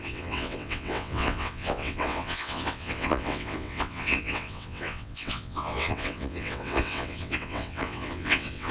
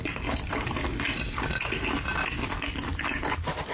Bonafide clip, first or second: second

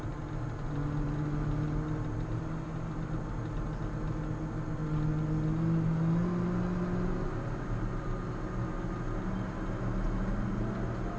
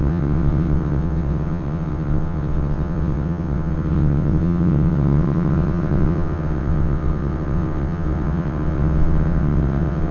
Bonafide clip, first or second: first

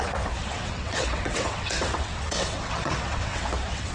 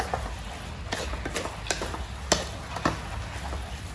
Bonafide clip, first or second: second